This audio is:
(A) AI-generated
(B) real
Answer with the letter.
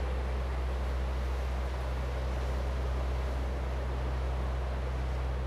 B